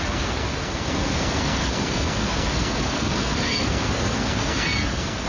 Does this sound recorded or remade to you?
remade